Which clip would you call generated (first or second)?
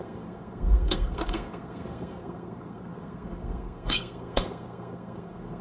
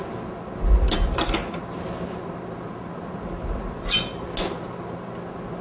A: first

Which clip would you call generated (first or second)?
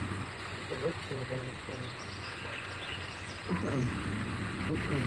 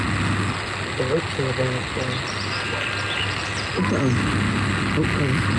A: first